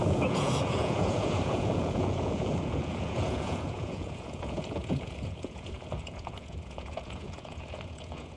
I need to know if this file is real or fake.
fake